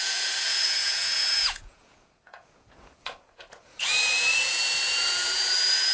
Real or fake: fake